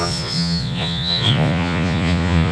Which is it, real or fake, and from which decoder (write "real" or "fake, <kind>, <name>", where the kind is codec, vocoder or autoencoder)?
fake, vocoder, Vocos